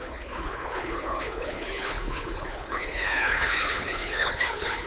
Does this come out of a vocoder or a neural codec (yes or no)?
yes